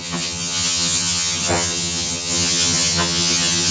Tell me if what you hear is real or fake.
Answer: fake